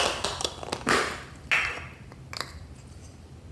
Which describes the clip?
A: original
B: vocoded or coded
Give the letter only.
A